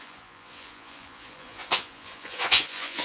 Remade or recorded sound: remade